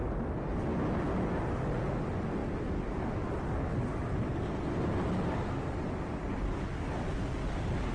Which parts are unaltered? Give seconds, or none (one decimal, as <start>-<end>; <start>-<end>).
0.0-7.9